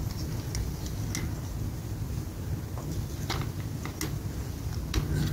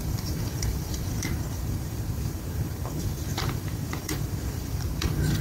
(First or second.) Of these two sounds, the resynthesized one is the second